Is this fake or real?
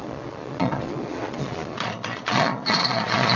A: fake